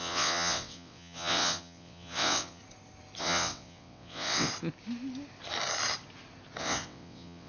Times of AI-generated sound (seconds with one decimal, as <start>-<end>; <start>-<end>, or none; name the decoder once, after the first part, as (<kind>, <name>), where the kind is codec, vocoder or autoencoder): 0.0-2.6 (vocoder, WaveNeXt); 3.2-4.5; 6.6-7.5